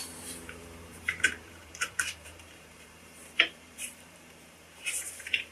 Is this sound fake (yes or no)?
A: yes